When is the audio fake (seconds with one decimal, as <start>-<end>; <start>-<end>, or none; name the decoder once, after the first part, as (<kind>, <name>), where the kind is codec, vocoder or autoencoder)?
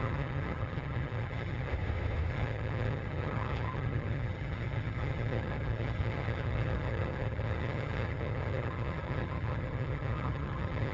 0.0-1.7 (vocoder, HiFi-GAN); 2.3-10.9